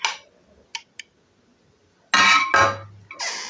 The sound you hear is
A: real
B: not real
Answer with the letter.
A